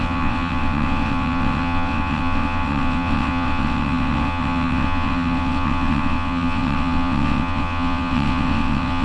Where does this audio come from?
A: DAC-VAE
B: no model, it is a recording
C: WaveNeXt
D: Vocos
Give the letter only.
C